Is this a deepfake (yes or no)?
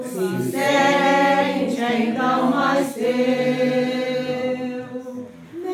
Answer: no